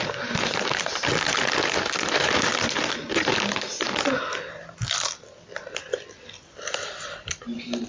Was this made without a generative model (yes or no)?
yes